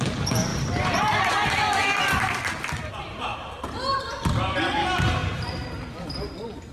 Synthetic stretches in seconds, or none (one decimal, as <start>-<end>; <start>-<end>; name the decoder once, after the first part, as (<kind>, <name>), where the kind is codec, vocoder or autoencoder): 0.5-1.3 (vocoder, BigVGAN v2); 5.2-5.8